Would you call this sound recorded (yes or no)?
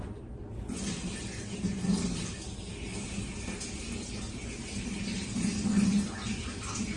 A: yes